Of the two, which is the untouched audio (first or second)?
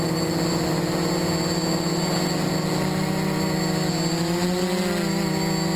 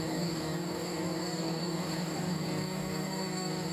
first